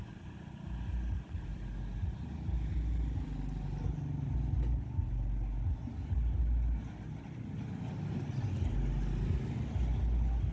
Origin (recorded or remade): recorded